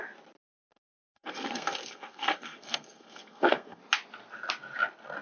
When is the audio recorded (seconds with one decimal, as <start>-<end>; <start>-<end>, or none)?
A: 0.0-0.7; 3.8-5.2